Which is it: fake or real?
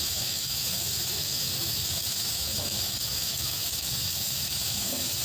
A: fake